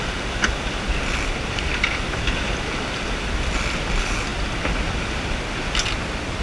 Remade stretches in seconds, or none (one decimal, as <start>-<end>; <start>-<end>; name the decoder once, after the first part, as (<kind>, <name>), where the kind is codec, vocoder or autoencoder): none